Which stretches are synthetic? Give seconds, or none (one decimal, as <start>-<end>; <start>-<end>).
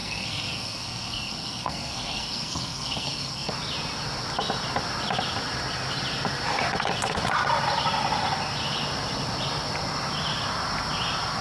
0.0-3.5